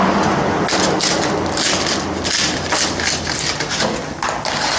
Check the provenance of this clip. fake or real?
real